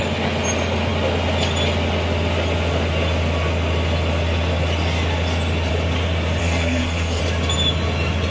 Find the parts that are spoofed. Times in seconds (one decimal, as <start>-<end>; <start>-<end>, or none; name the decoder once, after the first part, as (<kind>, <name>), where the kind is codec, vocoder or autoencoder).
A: 6.4-7.2 (codec, SNAC)